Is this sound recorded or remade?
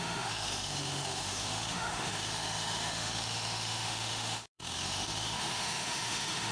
remade